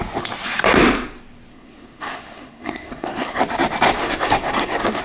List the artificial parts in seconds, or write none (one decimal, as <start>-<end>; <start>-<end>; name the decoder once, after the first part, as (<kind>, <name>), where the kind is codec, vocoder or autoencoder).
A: 1.5-3.4 (codec, SNAC); 4.0-5.0